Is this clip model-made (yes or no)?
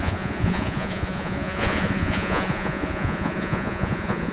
yes